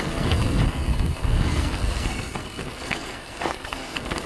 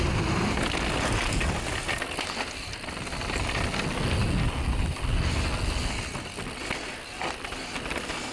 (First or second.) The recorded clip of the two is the second